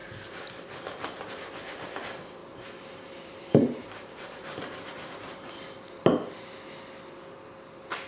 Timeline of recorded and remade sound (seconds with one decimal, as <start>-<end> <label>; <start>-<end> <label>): 0.0-2.4 recorded; 2.4-5.5 remade; 5.5-8.1 recorded